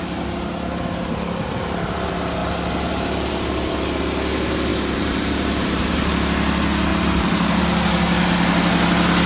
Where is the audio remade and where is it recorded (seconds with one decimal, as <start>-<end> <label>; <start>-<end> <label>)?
0.0-4.7 recorded; 4.7-6.1 remade; 6.1-9.3 recorded

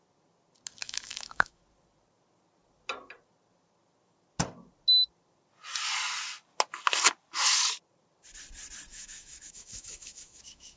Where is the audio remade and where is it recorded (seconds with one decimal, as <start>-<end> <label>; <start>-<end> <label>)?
0.0-0.8 recorded; 0.8-1.6 remade; 1.6-8.9 recorded; 8.9-10.8 remade

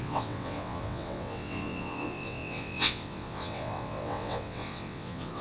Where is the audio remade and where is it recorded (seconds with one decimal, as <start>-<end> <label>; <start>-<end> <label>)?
0.0-5.4 remade

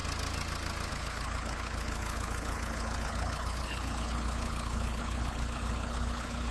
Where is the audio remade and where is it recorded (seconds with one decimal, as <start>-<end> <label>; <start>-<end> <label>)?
0.0-0.9 recorded; 0.9-6.5 remade